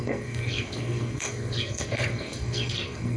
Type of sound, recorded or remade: remade